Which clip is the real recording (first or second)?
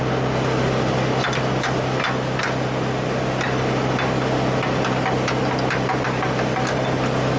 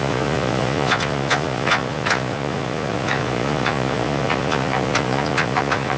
first